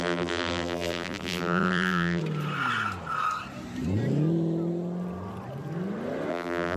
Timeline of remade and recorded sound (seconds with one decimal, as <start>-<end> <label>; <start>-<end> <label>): 0.0-2.2 remade; 2.2-6.3 recorded; 6.3-6.8 remade